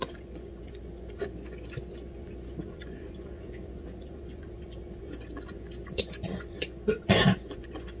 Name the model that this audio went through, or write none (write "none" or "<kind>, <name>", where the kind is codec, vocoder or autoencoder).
vocoder, Vocos